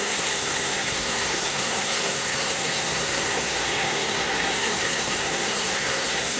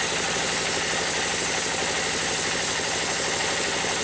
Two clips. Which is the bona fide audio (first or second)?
second